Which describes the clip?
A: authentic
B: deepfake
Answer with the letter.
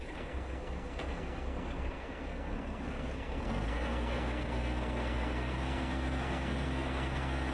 B